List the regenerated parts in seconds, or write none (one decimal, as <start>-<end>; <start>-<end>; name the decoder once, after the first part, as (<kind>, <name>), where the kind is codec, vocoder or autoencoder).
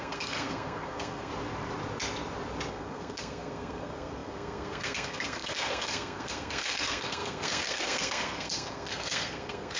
0.0-1.3 (codec, SNAC); 2.7-9.8